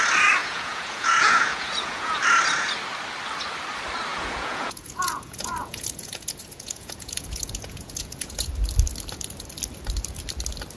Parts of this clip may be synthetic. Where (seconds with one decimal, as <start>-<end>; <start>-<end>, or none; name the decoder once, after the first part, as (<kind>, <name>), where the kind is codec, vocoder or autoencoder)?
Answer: 0.4-2.2 (vocoder, Vocos); 4.1-8.5